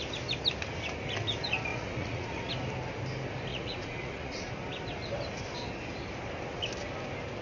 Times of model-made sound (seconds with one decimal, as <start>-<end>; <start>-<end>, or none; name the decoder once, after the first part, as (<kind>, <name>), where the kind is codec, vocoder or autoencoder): 1.7-2.5 (vocoder, Vocos); 3.5-4.5